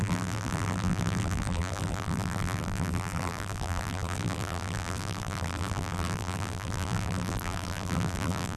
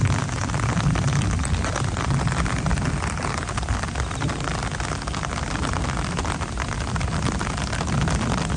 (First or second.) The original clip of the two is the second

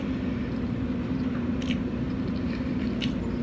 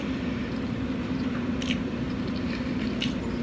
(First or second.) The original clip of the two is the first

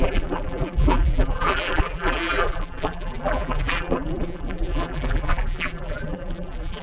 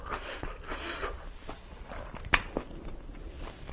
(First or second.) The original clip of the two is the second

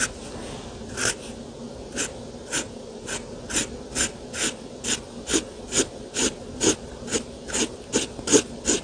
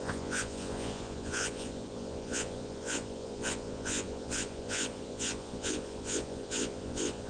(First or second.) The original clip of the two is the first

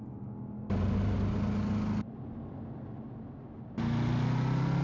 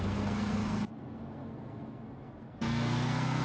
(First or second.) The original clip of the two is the first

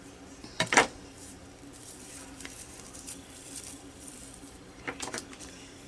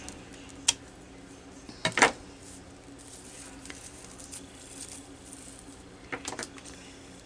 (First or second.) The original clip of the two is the second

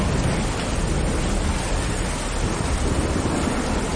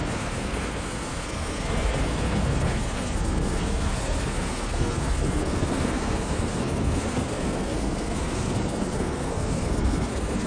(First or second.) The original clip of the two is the first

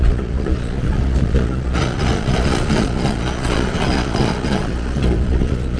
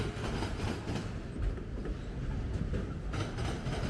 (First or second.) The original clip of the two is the second